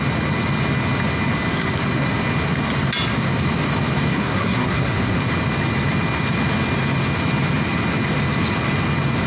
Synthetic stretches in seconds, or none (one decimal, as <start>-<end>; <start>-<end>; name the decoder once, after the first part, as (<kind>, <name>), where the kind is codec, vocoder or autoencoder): 4.1-5.2 (codec, SNAC)